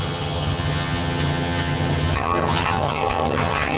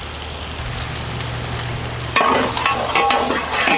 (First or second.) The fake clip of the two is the first